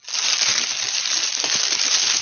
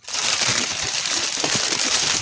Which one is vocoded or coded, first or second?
second